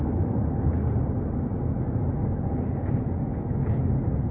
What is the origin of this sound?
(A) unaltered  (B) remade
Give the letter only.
A